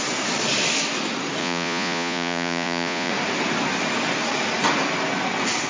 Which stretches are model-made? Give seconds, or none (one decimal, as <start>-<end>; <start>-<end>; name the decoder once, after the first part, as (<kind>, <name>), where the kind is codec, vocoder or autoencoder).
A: 1.4-3.1 (vocoder, Vocos)